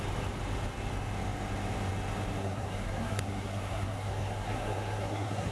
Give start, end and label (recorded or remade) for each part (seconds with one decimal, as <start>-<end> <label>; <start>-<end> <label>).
0.0-2.4 recorded; 2.4-5.5 remade